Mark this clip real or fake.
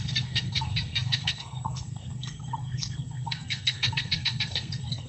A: fake